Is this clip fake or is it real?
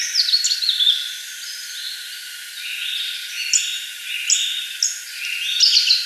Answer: real